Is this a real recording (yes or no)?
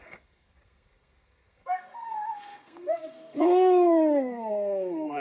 no